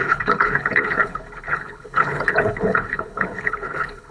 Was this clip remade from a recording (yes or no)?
yes